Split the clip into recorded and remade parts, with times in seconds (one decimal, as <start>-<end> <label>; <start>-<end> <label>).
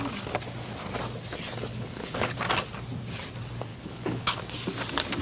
0.0-1.7 recorded; 1.7-2.3 remade; 2.3-3.7 recorded; 3.7-4.4 remade; 4.4-5.2 recorded